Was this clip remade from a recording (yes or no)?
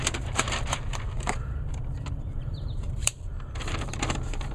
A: yes